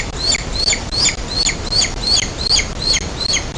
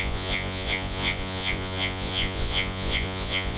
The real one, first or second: first